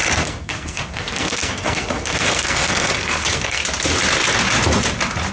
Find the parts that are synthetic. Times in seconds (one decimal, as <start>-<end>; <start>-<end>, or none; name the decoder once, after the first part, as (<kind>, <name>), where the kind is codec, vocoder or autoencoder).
0.0-3.6 (codec, SNAC)